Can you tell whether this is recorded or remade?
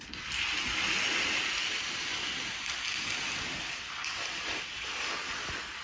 recorded